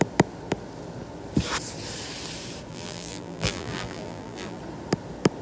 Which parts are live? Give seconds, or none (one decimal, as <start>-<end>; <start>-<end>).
0.0-2.7; 4.6-5.4